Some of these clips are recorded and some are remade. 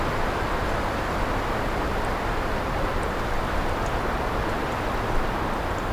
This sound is recorded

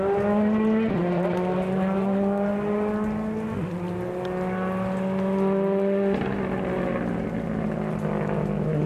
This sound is recorded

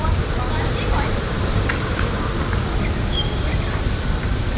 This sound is remade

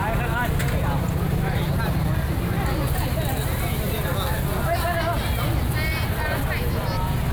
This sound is recorded